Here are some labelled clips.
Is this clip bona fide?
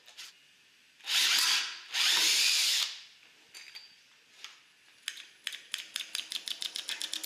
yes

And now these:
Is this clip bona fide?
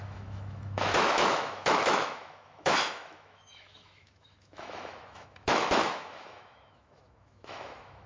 no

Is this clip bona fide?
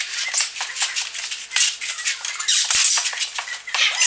yes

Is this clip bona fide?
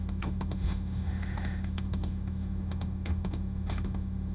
no